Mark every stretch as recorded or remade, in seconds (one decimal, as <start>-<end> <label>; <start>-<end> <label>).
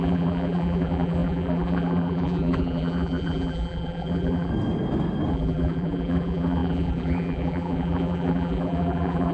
0.0-4.5 remade; 4.5-5.3 recorded; 5.3-9.3 remade